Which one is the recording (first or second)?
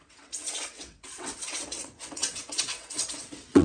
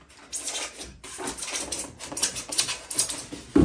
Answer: second